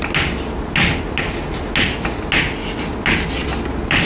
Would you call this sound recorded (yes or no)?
yes